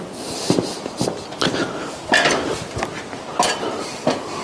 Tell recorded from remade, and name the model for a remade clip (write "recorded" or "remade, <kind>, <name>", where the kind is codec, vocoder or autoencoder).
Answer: recorded